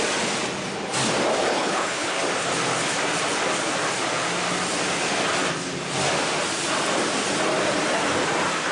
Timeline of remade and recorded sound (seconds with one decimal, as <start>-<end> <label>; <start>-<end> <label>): 0.0-1.5 recorded; 1.5-2.2 remade; 2.2-8.7 recorded